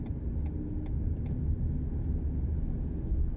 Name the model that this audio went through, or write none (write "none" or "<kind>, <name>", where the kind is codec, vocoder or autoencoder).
none